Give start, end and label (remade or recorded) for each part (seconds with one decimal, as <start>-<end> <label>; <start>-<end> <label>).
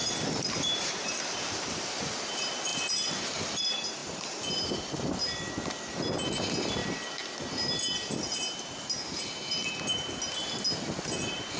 0.0-1.2 remade; 1.2-2.7 recorded; 2.7-3.6 remade; 3.6-11.6 recorded